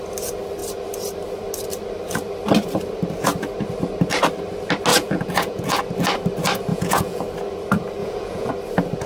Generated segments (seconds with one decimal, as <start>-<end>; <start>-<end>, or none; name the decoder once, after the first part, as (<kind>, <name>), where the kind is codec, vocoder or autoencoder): 4.9-5.8 (vocoder, Vocos); 6.7-7.2; 8.0-8.5